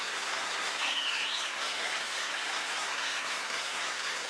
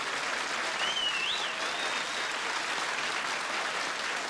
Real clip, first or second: second